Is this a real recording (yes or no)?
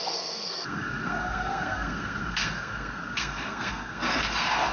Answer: no